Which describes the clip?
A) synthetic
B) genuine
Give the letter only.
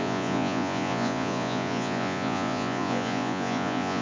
A